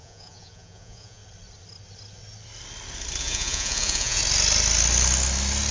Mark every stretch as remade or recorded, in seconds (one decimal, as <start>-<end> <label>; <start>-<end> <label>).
0.0-1.2 remade; 1.2-3.2 recorded; 3.2-4.2 remade; 4.2-5.7 recorded